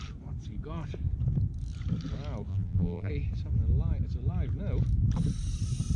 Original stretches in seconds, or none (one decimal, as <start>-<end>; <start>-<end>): 0.0-2.5; 3.1-6.0